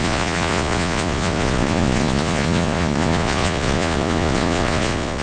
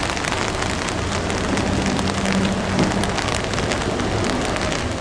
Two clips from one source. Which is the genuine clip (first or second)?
second